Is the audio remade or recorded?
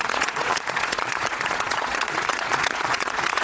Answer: remade